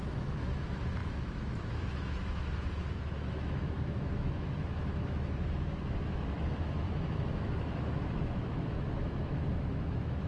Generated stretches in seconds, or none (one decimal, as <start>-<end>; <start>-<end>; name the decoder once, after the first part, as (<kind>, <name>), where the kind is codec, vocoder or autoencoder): 0.0-10.3 (autoencoder, DAC-VAE)